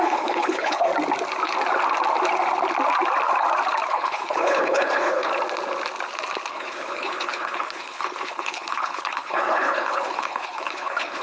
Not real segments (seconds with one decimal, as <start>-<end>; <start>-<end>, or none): 0.0-0.9; 3.9-5.3; 6.5-11.2